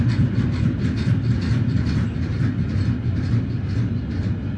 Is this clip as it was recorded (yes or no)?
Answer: yes